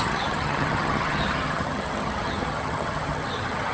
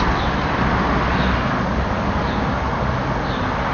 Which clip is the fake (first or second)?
first